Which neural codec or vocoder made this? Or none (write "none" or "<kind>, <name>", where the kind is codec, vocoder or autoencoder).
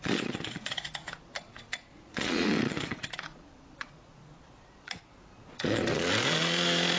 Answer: vocoder, Vocos